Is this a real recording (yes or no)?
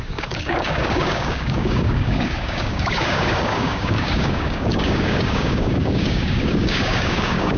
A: no